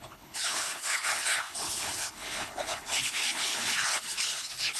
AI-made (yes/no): yes